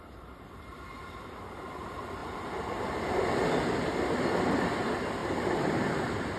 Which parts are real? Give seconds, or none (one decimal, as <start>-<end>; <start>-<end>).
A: 0.0-2.2; 3.4-5.2; 5.7-6.4